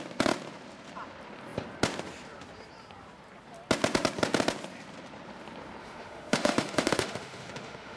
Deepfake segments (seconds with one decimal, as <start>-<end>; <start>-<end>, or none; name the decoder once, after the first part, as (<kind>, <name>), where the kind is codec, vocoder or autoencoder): 5.8-8.0 (autoencoder, DAC-VAE)